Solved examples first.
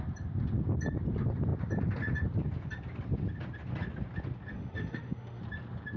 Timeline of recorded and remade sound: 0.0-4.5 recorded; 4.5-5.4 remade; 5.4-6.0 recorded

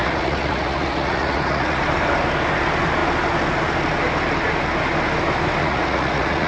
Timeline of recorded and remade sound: 0.0-1.8 remade; 1.8-5.6 recorded; 5.6-6.5 remade

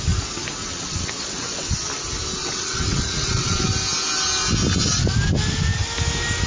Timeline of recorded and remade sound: 0.0-0.6 recorded; 0.6-1.7 remade; 1.7-2.4 recorded; 2.4-3.6 remade; 3.6-6.5 recorded

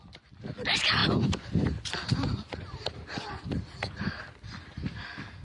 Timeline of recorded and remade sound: 0.0-1.0 recorded; 1.0-4.2 remade; 4.2-5.4 recorded

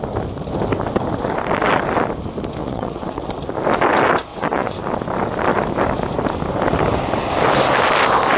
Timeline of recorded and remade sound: 0.0-2.6 recorded; 2.6-3.3 remade; 3.3-4.3 recorded; 4.3-4.8 remade; 4.8-8.4 recorded

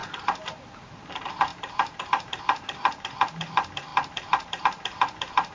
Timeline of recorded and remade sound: 0.0-5.5 remade

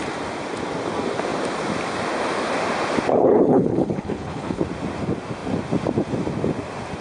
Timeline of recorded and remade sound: 0.0-3.1 recorded; 3.1-4.6 remade; 4.6-7.0 recorded